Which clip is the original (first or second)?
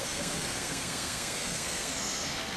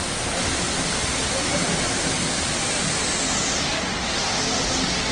second